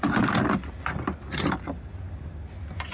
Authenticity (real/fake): real